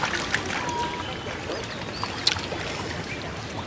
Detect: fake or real real